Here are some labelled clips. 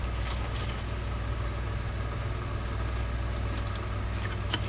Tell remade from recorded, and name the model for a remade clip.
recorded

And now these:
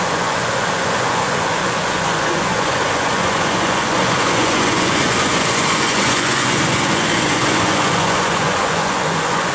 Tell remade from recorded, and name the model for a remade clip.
remade, vocoder, Vocos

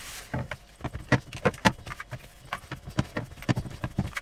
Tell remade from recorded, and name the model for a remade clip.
recorded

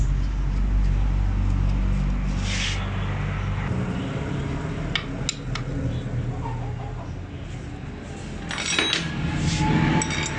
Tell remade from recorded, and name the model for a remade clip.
recorded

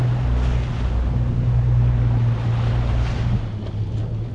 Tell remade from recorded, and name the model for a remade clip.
recorded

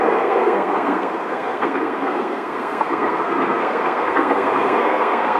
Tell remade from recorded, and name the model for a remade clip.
remade, codec, SNAC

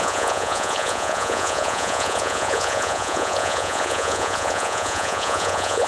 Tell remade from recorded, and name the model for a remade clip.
remade, vocoder, Vocos